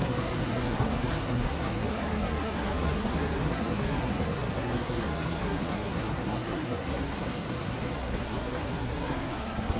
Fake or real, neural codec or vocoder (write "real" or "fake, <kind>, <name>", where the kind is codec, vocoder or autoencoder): fake, codec, SNAC